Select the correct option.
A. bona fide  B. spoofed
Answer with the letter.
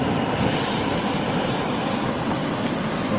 A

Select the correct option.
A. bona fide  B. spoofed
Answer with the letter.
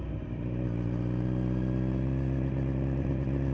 A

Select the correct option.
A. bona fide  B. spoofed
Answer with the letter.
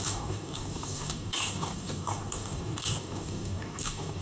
B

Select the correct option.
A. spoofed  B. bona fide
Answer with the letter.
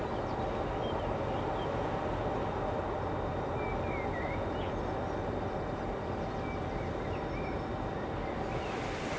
B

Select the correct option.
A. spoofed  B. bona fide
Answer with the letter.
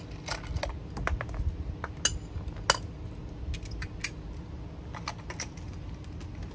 B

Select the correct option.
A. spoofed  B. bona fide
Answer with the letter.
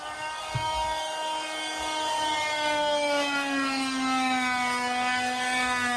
A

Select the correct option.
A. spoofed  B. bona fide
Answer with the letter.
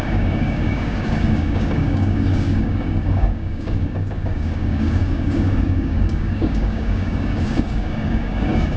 A